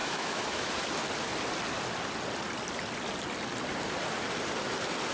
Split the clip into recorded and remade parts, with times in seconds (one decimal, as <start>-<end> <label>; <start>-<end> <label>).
0.0-0.7 remade; 0.7-5.1 recorded